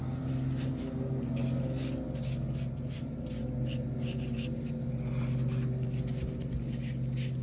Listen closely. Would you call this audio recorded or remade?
recorded